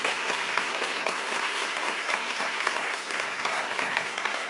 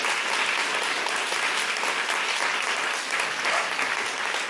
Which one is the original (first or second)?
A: second